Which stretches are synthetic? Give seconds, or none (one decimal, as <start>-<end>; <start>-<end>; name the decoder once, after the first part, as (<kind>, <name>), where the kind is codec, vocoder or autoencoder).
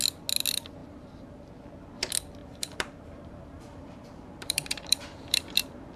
0.8-1.5 (vocoder, BigVGAN v2); 2.4-6.0